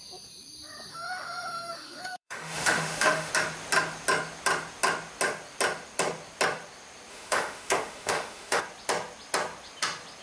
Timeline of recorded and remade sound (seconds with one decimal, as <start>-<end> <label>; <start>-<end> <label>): 0.0-0.9 recorded; 0.9-3.3 remade; 3.3-7.1 recorded; 7.1-8.6 remade; 8.6-10.2 recorded